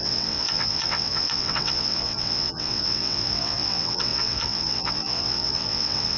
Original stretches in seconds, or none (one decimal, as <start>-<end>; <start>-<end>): none